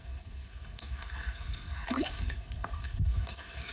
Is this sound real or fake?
fake